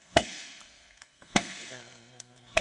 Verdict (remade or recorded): remade